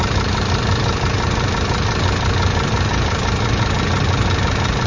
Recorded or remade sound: recorded